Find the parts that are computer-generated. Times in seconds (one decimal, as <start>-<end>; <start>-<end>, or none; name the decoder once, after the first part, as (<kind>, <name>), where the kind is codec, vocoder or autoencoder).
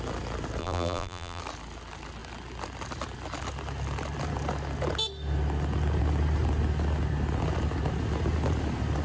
0.6-1.4 (vocoder, BigVGAN v2)